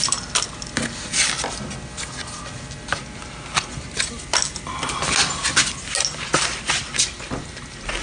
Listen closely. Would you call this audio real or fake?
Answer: real